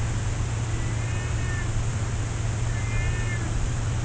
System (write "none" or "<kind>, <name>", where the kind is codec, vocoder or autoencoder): none